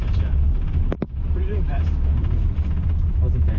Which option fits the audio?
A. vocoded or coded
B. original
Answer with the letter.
A